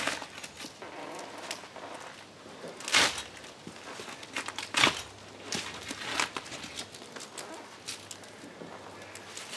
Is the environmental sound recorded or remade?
recorded